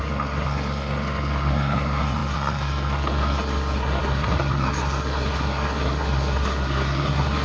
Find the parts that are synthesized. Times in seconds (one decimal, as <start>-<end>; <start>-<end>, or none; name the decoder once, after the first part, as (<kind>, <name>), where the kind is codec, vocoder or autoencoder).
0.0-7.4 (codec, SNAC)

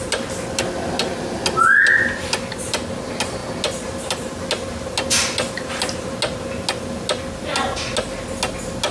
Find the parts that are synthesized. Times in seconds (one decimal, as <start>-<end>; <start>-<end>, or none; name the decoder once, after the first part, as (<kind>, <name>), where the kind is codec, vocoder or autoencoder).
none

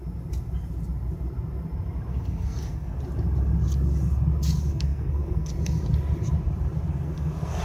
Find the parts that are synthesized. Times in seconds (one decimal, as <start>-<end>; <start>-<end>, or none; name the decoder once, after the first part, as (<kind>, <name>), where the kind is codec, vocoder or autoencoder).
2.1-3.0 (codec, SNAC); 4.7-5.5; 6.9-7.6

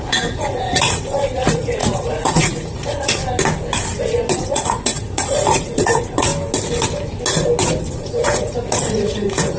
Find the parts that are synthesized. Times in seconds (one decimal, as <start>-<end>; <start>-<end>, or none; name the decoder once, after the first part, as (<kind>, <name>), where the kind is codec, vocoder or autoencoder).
0.0-3.2 (vocoder, Vocos); 4.4-6.3; 7.9-9.6

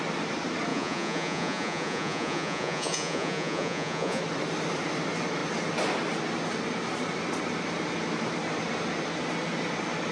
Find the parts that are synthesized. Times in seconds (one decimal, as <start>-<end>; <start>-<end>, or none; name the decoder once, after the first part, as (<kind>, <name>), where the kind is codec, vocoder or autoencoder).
0.7-4.2 (vocoder, Vocos)

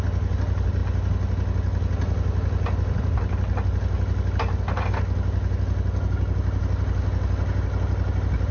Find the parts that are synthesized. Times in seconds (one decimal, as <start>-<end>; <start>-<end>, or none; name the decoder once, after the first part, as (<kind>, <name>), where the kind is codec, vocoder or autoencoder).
none